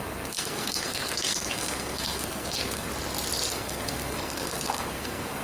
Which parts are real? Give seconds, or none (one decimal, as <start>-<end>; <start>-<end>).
2.9-3.5